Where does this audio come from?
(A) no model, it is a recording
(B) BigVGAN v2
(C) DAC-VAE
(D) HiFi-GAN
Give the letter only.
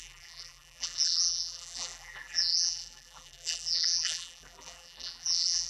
B